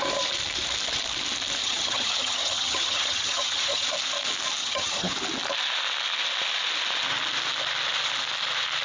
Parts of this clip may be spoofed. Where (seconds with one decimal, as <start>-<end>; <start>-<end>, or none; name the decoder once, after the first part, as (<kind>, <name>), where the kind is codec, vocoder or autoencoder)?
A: 1.6-3.9 (vocoder, HiFi-GAN); 4.6-5.1